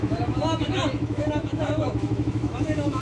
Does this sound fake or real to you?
fake